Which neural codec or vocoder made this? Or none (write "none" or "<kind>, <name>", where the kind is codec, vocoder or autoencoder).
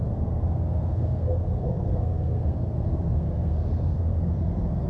codec, SNAC